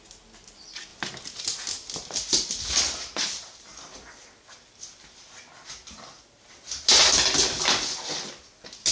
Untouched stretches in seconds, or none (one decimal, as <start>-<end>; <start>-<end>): 0.0-8.9